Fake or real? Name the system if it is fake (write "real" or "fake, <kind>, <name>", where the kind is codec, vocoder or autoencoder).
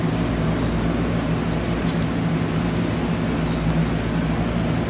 real